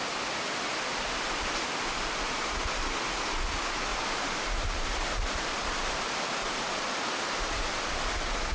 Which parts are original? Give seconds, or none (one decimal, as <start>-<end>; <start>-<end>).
0.0-0.9; 3.0-3.9; 7.8-8.5